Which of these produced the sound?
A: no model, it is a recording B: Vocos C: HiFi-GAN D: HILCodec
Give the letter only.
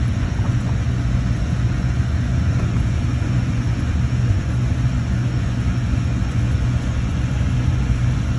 B